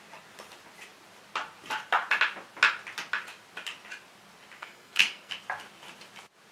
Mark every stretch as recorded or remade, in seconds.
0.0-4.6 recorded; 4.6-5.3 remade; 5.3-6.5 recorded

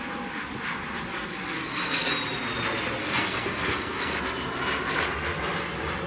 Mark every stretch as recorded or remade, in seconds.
0.0-1.6 recorded; 1.6-2.1 remade; 2.1-3.0 recorded; 3.0-4.2 remade; 4.2-6.1 recorded